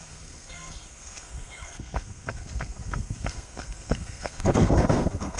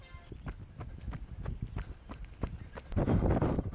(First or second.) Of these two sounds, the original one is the second